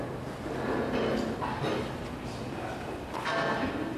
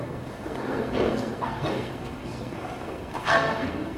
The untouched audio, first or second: first